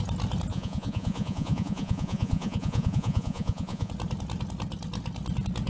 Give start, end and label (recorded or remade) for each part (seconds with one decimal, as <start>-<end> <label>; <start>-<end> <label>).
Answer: 0.0-0.5 recorded; 0.5-3.9 remade; 3.9-5.7 recorded